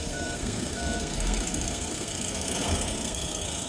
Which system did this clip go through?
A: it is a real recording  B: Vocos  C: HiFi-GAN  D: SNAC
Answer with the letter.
D